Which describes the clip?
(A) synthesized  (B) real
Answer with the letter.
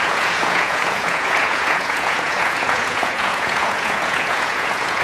A